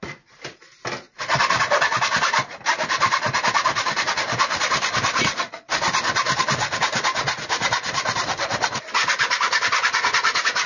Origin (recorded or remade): recorded